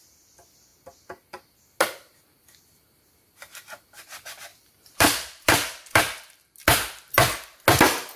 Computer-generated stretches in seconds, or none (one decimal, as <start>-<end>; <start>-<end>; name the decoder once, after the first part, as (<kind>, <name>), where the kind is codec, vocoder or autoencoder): 4.5-6.0 (vocoder, BigVGAN v2)